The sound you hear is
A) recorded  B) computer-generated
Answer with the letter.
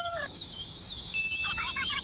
B